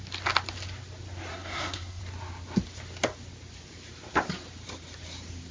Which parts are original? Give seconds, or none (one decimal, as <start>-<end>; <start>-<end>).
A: 0.0-1.3; 2.0-5.5

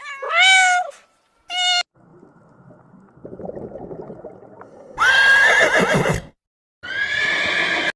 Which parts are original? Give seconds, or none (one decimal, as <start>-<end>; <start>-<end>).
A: 0.0-8.0

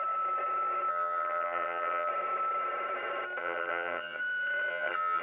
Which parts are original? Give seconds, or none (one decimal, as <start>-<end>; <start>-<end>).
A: 0.0-0.9; 2.1-3.4; 4.2-4.7

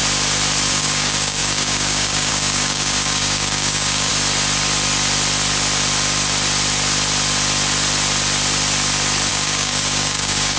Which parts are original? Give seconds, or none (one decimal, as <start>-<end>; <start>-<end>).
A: 0.0-0.7; 4.1-9.3

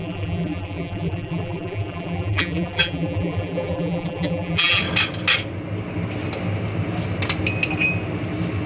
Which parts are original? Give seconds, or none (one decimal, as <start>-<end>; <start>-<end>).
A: 4.8-8.7

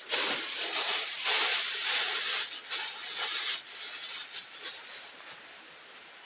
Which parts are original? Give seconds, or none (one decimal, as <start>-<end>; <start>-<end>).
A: 1.5-5.0

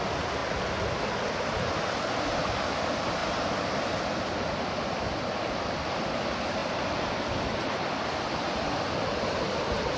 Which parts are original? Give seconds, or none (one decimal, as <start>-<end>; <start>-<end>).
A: 0.0-10.0

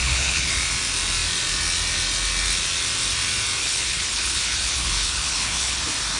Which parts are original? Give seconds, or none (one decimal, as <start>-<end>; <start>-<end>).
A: 0.5-3.6; 5.8-6.2